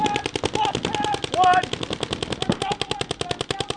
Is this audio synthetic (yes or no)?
no